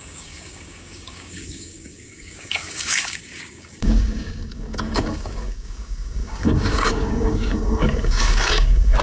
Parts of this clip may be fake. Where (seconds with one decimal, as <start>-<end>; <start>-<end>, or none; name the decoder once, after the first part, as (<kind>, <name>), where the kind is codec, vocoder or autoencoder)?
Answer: 0.0-9.0 (codec, DAC)